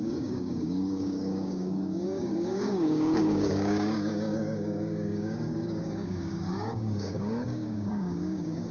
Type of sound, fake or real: fake